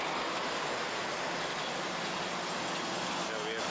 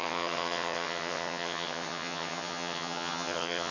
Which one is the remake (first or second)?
second